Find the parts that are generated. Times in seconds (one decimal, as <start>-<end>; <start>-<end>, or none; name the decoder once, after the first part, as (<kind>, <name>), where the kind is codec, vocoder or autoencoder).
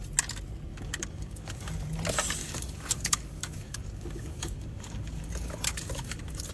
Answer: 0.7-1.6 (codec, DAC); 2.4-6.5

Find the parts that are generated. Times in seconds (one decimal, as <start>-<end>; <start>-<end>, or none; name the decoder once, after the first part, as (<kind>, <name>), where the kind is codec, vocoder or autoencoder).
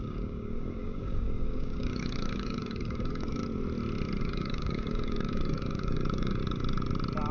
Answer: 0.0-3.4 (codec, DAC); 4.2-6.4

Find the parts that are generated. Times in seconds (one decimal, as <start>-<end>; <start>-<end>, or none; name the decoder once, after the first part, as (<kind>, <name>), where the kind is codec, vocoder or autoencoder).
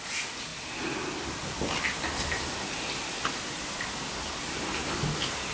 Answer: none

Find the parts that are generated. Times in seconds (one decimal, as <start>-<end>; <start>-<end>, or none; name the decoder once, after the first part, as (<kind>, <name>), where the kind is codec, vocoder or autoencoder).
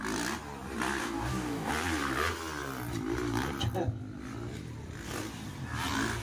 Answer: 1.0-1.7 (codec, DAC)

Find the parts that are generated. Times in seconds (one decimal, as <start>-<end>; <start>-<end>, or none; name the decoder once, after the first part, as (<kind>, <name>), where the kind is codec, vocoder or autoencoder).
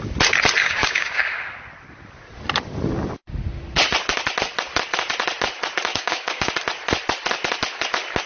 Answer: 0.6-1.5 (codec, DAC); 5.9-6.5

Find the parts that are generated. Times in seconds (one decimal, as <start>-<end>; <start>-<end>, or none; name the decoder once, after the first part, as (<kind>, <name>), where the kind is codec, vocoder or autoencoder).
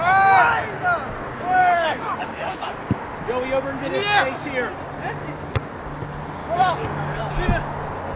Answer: 1.6-3.0 (codec, DAC); 6.4-7.2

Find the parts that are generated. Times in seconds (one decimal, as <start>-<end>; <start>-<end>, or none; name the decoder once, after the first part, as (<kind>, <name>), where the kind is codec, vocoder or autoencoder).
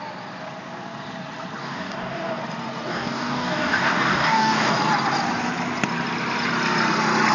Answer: 1.6-2.4 (codec, DAC); 2.9-4.7